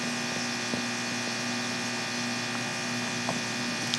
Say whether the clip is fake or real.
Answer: real